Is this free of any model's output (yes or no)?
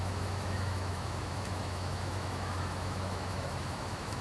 no